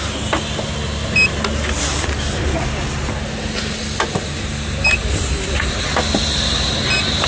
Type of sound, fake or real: real